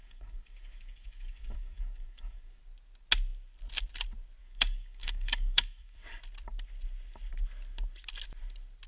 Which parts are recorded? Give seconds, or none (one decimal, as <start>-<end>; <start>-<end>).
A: 2.6-4.4; 6.2-8.9